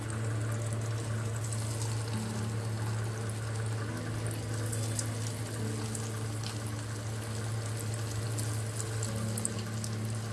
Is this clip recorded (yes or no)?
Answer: yes